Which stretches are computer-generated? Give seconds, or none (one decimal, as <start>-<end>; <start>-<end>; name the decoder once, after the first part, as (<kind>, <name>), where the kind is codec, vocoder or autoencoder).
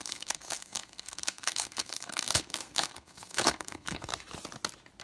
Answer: 0.0-4.1 (codec, SNAC)